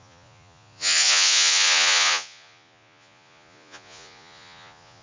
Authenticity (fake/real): fake